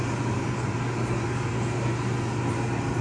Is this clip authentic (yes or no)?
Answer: yes